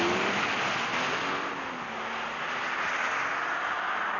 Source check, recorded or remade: recorded